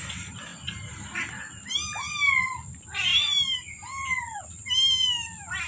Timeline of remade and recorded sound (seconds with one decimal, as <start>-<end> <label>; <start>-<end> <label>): 0.0-5.7 recorded